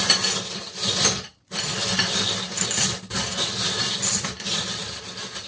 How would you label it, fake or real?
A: real